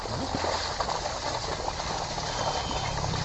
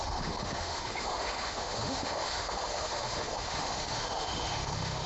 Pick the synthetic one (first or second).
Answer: second